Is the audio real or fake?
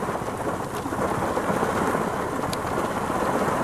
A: real